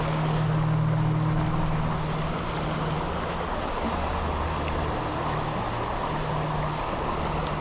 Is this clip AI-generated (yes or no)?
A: no